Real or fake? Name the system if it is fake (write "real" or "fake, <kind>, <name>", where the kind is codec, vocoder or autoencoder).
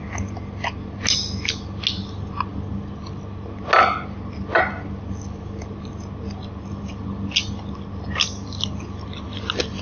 real